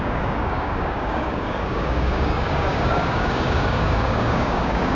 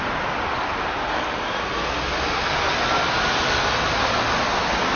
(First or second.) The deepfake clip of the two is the first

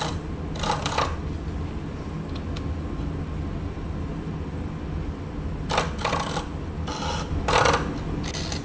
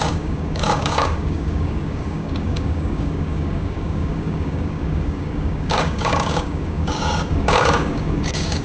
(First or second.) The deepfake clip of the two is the second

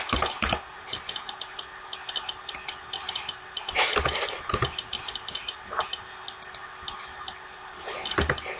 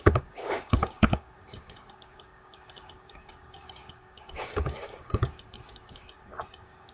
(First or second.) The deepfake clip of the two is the second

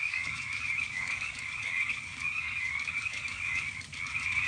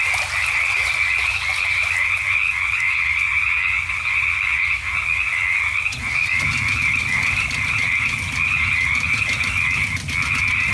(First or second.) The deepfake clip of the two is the first